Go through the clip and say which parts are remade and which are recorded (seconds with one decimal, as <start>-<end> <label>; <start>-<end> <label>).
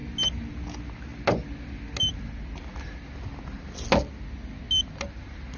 0.0-5.6 recorded